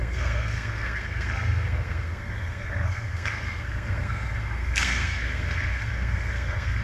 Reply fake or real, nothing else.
fake